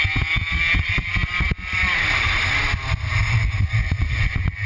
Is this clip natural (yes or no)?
yes